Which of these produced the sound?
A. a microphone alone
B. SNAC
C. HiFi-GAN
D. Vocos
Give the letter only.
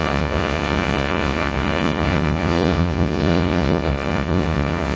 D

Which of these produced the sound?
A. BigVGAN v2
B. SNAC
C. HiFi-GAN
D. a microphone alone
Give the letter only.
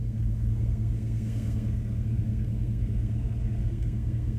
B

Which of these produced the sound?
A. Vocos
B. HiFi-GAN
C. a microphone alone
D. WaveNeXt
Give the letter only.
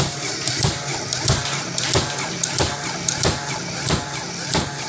C